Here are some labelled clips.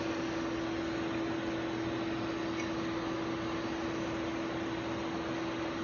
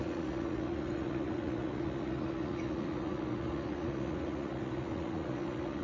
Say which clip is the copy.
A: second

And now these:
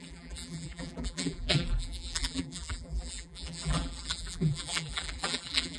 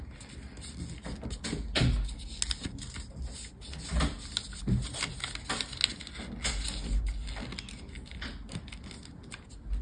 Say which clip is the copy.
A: first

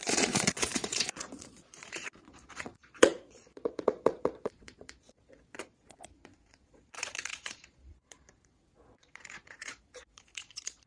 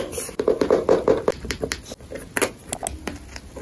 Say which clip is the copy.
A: first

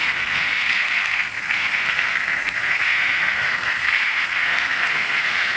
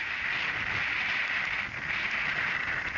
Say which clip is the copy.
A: first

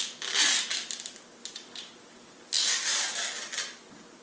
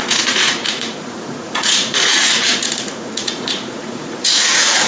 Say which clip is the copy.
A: second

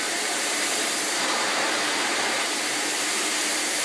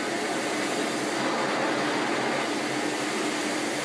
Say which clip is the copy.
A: first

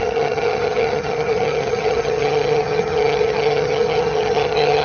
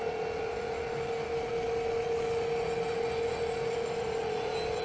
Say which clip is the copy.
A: first